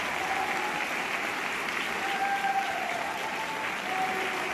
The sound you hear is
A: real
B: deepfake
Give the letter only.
A